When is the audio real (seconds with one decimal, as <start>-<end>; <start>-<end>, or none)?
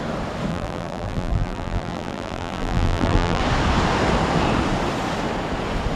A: 0.0-0.5; 3.4-6.0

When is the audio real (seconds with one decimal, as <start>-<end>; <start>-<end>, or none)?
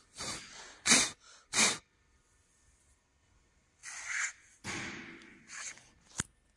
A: 0.0-6.6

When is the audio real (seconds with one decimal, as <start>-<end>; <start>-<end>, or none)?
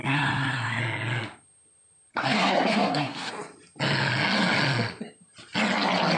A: 0.8-2.1; 3.3-6.2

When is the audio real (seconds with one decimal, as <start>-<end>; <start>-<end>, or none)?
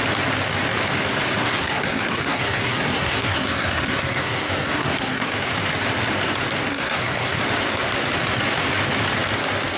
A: 0.0-1.4; 5.3-6.7; 7.4-9.8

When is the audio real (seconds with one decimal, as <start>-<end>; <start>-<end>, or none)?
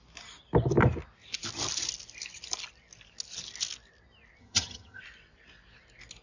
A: 0.0-4.4; 5.0-6.2